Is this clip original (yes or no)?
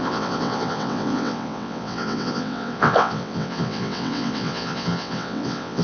no